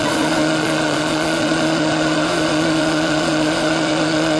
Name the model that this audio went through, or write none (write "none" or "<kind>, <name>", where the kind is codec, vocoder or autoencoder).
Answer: vocoder, Vocos